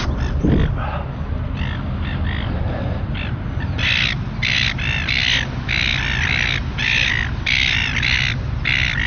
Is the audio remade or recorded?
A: recorded